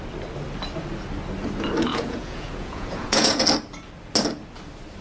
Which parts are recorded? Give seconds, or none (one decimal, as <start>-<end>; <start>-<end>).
0.0-1.9; 3.4-5.0